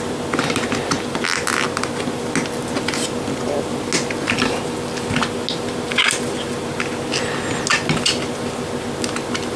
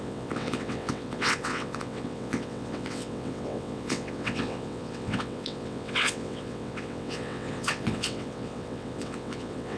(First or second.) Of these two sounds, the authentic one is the first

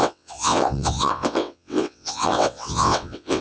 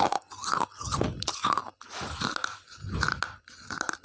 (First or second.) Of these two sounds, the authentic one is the second